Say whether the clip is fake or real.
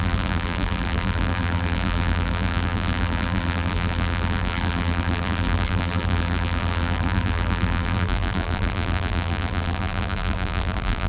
fake